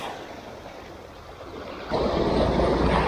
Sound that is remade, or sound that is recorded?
recorded